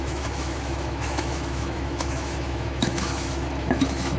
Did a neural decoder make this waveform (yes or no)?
yes